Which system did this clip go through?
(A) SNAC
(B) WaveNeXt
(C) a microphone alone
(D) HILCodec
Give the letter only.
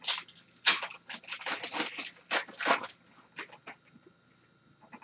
C